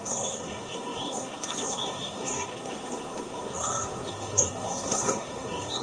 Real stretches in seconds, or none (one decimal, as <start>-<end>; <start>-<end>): none